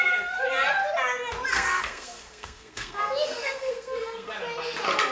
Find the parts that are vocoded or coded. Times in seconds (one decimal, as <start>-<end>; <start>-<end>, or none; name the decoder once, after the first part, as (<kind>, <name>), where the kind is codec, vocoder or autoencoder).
1.5-4.3 (codec, SNAC)